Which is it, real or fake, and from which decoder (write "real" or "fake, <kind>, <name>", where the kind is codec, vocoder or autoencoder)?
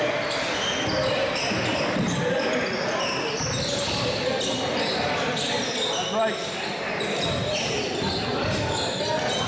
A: real